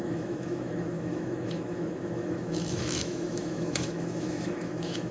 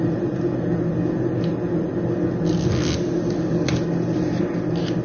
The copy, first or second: first